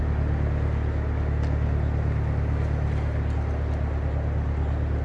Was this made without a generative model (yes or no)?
yes